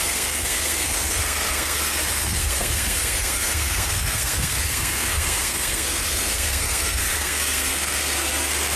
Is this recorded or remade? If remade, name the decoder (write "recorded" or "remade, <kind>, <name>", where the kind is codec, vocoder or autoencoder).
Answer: remade, codec, SNAC